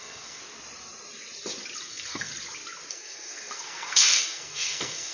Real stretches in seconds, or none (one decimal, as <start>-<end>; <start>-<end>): 0.4-1.9; 2.3-2.9